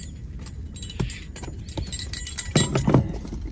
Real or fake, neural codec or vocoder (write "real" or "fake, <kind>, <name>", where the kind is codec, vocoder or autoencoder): real